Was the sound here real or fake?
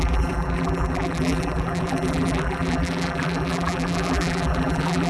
fake